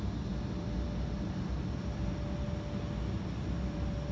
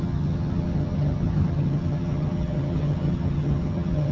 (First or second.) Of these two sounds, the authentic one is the first